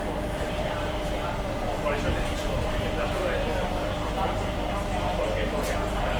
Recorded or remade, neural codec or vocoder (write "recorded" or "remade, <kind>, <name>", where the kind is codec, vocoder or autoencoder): remade, vocoder, BigVGAN v2